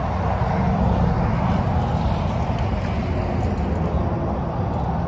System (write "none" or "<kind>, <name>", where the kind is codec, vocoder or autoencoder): none